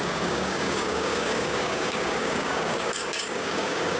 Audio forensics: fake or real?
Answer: fake